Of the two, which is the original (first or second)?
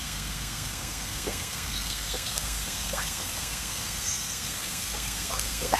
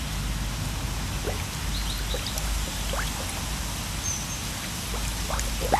second